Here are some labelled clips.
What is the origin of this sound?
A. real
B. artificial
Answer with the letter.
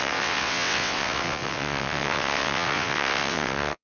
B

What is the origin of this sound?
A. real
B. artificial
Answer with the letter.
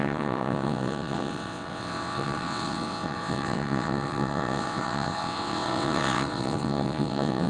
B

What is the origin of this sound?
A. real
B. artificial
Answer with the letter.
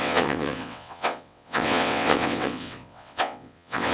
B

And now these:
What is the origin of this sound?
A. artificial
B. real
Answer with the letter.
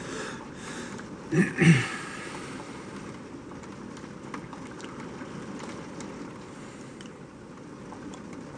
B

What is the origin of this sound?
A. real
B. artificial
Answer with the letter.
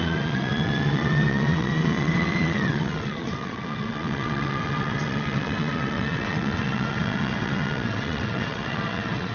B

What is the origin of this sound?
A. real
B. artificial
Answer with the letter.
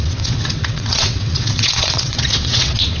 B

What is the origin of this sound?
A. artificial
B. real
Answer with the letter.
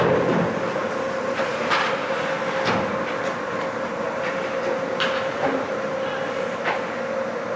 B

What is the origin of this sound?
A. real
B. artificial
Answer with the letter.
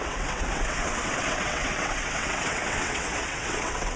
B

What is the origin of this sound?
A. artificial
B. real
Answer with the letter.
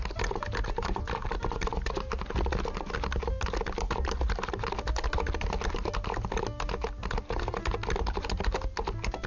B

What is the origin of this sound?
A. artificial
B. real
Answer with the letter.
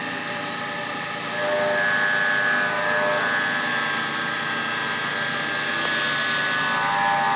B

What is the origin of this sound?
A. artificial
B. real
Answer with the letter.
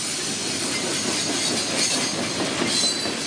B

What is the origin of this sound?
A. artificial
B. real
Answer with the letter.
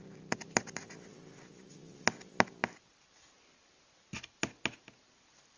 B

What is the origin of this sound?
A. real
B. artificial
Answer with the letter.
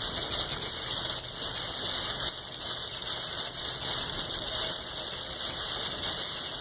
A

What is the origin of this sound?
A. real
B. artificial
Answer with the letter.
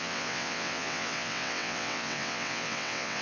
B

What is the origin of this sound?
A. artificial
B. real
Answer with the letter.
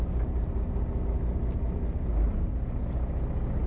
B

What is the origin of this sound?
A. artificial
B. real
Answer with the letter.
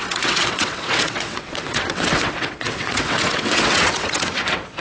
A